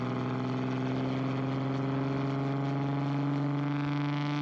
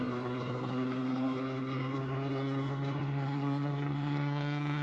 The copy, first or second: second